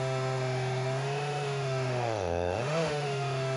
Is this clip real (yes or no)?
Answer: no